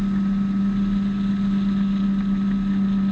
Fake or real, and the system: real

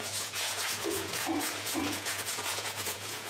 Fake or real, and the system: fake, vocoder, Vocos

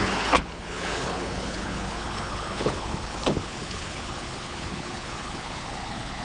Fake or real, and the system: fake, codec, HILCodec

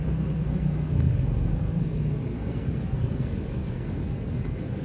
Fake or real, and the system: fake, codec, SNAC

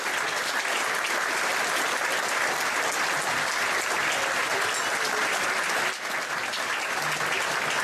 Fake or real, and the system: real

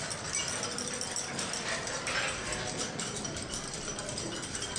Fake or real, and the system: real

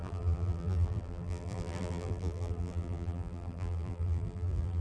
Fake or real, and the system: fake, vocoder, BigVGAN v2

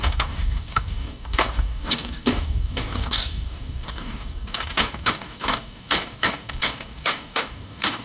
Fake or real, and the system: fake, codec, DAC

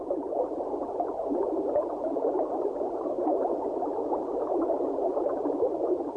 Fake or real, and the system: real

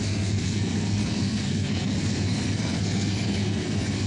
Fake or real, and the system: fake, codec, SNAC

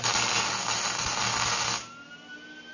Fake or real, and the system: real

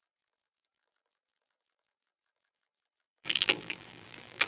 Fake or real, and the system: fake, vocoder, BigVGAN v2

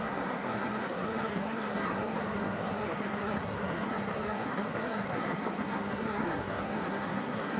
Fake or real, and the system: fake, codec, SNAC